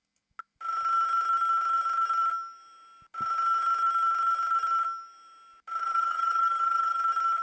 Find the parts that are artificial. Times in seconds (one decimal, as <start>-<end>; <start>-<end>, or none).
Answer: 5.8-7.0